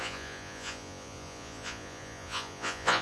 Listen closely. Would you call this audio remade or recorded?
remade